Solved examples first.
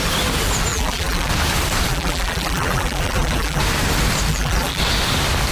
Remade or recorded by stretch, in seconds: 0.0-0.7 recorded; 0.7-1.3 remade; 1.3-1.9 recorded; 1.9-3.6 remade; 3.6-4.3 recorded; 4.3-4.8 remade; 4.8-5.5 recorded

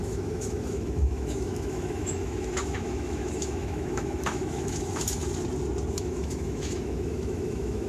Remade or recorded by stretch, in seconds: 0.0-5.2 remade; 5.2-5.9 recorded; 5.9-7.9 remade

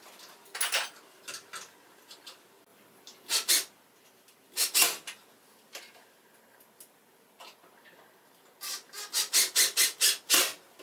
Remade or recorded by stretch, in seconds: 0.0-10.8 recorded

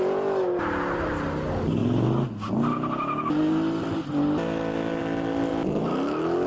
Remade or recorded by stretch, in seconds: 0.0-6.5 recorded

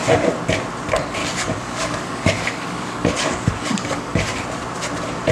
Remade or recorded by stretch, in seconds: 0.0-1.2 recorded; 1.2-4.4 remade; 4.4-5.3 recorded

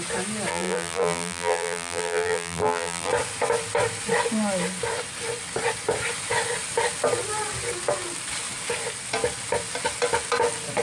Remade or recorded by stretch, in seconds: 0.0-0.5 recorded; 0.5-3.1 remade; 3.1-10.8 recorded

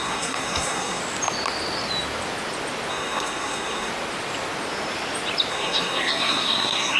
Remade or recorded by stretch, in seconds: 0.0-1.0 remade; 1.0-2.9 recorded; 2.9-3.9 remade; 3.9-5.5 recorded; 5.5-7.0 remade

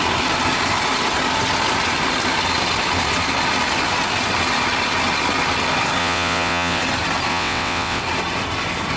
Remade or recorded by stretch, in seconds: 0.0-6.0 recorded; 6.0-6.8 remade; 6.8-7.3 recorded; 7.3-8.0 remade; 8.0-9.0 recorded